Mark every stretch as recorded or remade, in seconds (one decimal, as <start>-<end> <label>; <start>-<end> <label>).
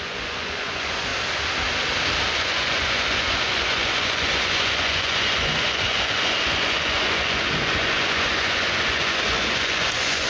0.0-1.1 remade; 1.1-2.3 recorded; 2.3-10.3 remade